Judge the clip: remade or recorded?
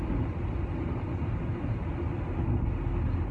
recorded